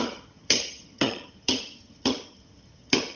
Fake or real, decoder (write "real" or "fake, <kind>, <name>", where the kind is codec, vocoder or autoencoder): fake, vocoder, HiFi-GAN